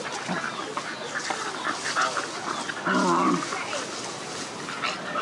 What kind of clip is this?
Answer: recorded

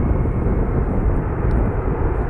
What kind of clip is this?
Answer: recorded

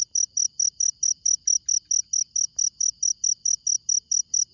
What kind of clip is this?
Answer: recorded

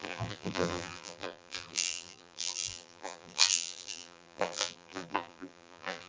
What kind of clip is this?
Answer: remade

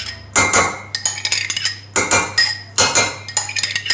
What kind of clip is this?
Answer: recorded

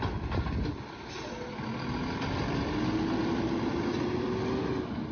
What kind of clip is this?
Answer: recorded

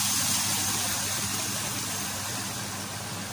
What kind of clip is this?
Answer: recorded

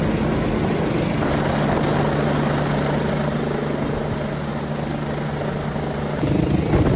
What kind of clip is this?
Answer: recorded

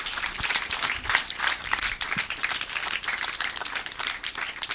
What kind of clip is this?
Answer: remade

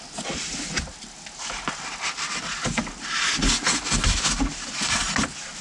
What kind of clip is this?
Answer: recorded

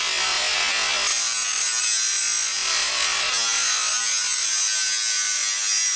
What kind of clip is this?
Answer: recorded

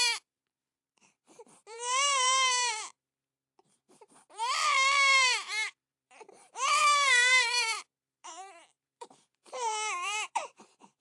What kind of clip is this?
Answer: remade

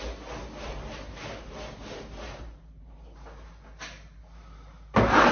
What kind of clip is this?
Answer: recorded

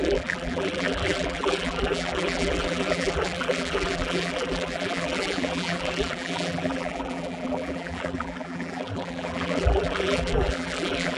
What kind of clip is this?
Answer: remade